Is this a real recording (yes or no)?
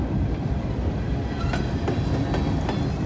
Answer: yes